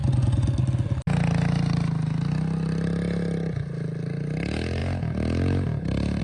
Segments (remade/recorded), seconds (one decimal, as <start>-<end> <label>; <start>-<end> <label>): 0.0-6.2 recorded